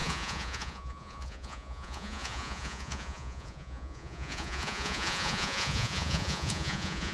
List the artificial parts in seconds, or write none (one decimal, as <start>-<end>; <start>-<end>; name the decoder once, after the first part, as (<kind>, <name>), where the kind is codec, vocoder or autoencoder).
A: 0.0-7.1 (vocoder, Vocos)